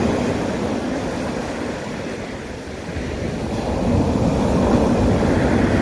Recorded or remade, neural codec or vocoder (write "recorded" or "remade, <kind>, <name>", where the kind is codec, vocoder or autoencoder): recorded